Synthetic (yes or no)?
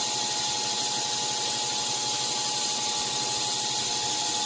no